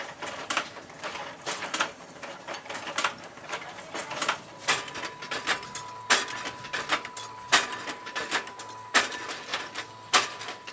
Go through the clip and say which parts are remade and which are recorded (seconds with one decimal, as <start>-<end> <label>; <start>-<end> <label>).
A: 0.0-4.0 remade; 4.0-9.0 recorded; 9.0-9.5 remade; 9.5-10.7 recorded